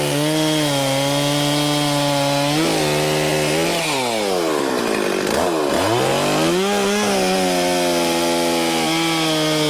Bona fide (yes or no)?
yes